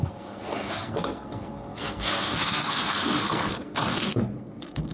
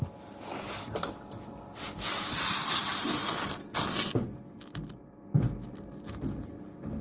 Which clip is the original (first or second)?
second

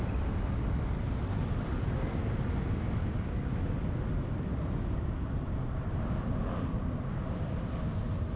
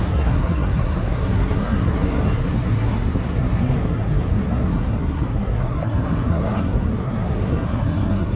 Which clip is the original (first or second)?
first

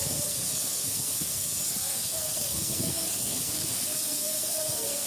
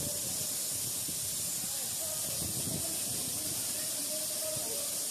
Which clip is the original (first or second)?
second